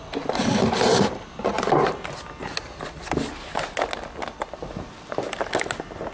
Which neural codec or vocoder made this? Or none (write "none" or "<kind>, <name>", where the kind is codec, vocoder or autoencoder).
none